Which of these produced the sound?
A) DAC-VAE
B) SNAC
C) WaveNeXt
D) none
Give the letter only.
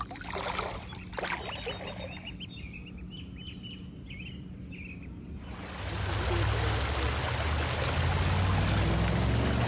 D